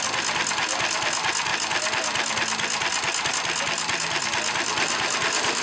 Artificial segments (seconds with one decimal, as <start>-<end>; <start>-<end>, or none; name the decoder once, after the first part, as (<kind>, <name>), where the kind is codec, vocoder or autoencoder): none